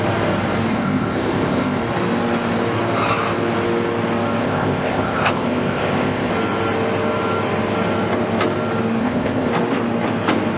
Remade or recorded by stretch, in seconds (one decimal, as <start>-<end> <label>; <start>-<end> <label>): 0.0-0.7 recorded; 0.7-1.8 remade; 1.8-4.4 recorded; 4.4-6.3 remade; 6.3-9.0 recorded; 9.0-9.5 remade; 9.5-10.6 recorded